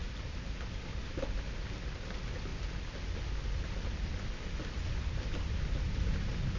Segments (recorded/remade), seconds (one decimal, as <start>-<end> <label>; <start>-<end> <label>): 0.0-6.6 recorded